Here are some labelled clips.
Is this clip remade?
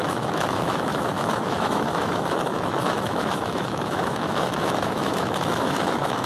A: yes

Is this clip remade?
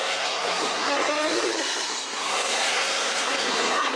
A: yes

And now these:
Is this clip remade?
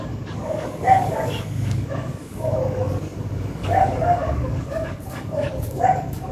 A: yes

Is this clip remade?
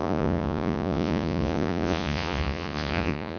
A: yes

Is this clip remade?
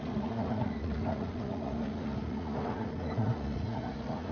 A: yes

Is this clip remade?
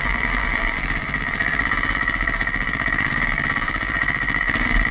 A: yes